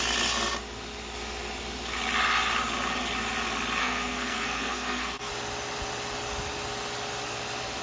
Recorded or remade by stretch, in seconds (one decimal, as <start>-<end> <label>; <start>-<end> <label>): 0.0-3.8 recorded; 3.8-5.3 remade; 5.3-7.8 recorded